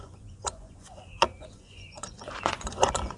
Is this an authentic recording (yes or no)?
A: no